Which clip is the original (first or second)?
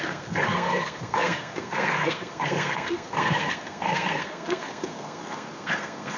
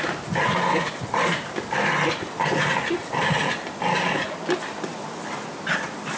second